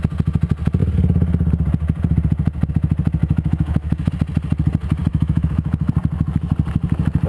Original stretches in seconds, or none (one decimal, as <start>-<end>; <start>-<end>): 0.0-3.2; 4.1-5.1; 5.9-7.3